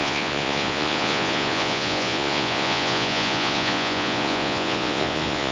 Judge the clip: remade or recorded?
remade